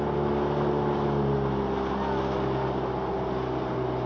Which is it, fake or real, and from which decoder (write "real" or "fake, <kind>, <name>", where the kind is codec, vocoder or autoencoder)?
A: real